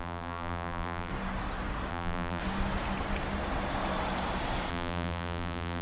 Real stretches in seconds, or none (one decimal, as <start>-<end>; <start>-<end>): 1.1-1.9; 2.4-4.7